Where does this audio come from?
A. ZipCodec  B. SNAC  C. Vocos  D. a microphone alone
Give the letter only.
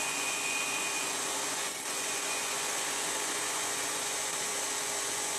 C